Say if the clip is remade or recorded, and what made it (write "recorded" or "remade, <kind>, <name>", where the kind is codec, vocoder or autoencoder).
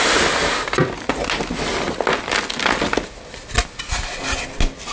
recorded